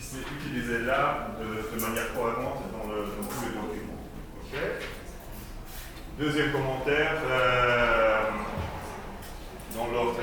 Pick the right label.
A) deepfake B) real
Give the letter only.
B